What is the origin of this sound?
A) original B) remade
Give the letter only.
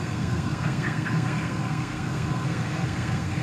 B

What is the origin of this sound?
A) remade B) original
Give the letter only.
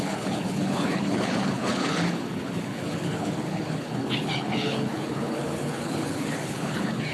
A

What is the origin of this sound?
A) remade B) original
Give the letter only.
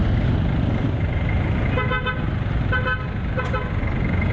B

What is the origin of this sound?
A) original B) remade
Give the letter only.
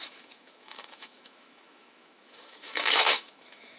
B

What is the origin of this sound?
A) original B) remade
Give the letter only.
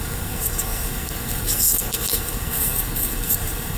B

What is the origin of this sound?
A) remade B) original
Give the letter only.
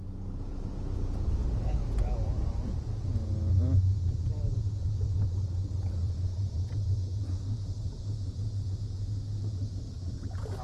A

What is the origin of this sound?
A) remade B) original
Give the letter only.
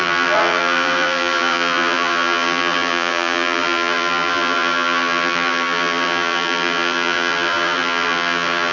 A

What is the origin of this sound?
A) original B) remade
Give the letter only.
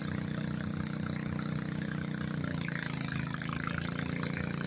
A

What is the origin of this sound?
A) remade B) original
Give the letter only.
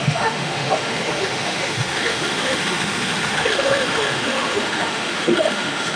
A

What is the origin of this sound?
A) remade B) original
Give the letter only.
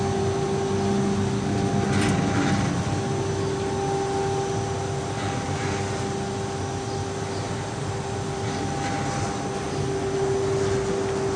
B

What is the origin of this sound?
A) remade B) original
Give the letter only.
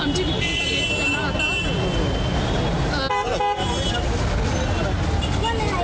B